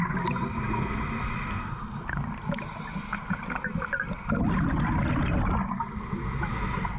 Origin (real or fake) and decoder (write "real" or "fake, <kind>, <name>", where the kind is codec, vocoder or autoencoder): real